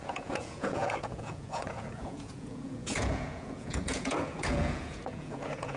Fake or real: fake